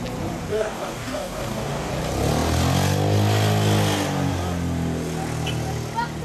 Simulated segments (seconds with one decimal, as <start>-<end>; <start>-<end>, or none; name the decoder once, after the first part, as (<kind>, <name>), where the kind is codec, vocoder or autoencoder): 0.5-1.9 (codec, DAC)